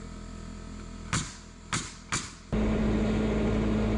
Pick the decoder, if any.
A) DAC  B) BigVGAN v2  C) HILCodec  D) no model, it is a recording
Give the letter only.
D